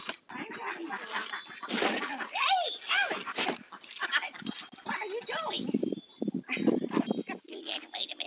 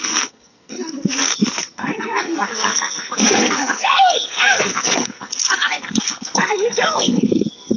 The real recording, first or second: first